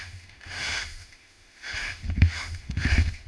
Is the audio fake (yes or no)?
yes